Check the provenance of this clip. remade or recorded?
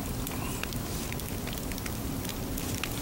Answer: recorded